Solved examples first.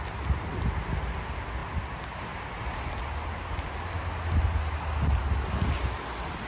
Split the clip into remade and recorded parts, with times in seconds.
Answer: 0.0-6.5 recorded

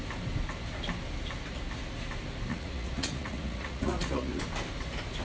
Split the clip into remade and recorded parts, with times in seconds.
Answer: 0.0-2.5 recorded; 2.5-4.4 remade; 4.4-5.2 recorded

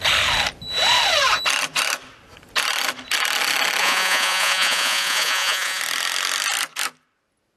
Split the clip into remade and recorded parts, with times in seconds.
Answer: 0.0-3.8 recorded; 3.8-5.8 remade; 5.8-7.6 recorded

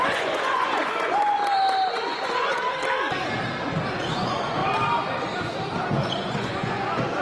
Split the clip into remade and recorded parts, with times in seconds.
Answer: 0.0-1.4 remade; 1.4-1.9 recorded; 1.9-2.8 remade; 2.8-4.1 recorded; 4.1-4.6 remade; 4.6-5.9 recorded; 5.9-7.2 remade